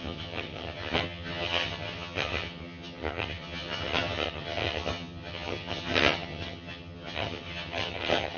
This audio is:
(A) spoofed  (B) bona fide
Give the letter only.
A